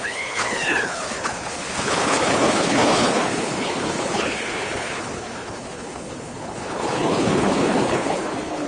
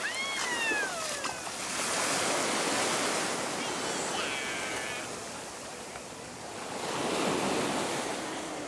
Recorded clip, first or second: second